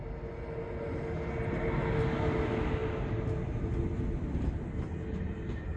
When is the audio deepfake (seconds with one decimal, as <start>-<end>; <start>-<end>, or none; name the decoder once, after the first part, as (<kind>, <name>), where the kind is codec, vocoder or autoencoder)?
none